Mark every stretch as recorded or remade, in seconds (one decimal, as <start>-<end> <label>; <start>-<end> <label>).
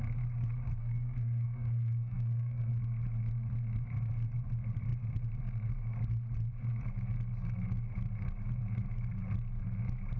0.0-0.8 recorded; 0.8-2.7 remade; 2.7-10.2 recorded